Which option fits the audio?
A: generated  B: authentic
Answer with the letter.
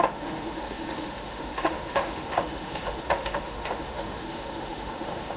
A